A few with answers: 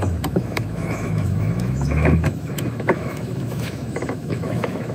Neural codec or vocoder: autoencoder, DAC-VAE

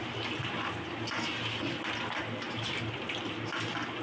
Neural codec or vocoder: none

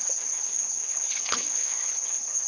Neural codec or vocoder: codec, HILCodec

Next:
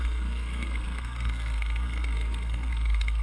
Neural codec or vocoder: codec, SNAC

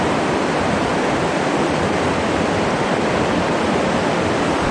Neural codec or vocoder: none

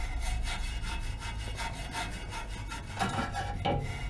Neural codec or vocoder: none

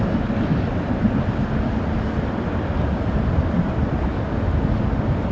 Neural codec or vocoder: none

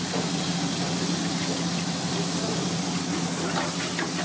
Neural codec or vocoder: none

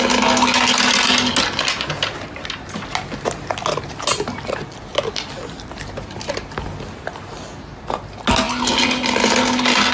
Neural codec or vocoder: none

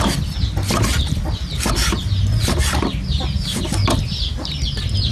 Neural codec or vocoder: none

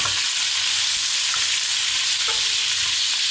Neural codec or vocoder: none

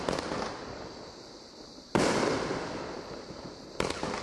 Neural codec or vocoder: none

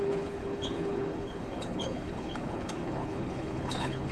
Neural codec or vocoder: codec, HILCodec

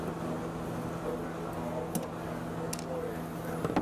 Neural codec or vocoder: none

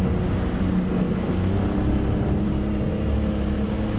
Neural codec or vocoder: none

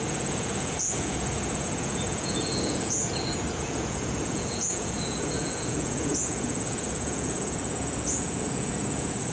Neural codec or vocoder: vocoder, Vocos